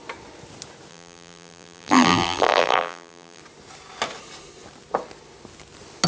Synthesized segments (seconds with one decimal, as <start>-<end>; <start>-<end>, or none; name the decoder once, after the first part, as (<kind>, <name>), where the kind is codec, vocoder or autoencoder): 0.9-3.4 (vocoder, BigVGAN v2)